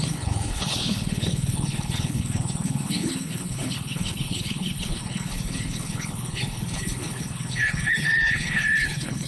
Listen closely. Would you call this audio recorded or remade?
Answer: remade